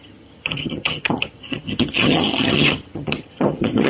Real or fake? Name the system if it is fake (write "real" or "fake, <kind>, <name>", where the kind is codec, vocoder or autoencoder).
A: fake, vocoder, HiFi-GAN